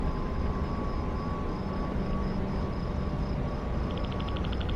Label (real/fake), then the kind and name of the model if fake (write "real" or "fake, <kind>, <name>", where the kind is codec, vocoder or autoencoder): real